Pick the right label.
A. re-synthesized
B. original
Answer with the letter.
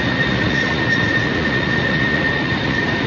A